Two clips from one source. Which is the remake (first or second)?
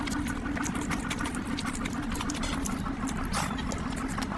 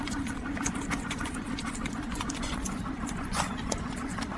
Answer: second